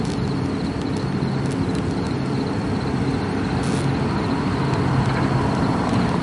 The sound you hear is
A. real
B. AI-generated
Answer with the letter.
A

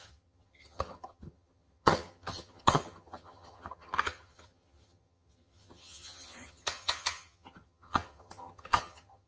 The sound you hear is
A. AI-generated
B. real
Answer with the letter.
A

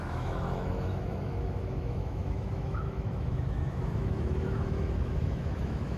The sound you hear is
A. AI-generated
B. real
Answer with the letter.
A